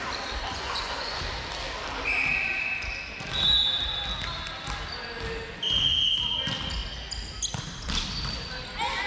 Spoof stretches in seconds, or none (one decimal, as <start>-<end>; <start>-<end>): 0.5-1.2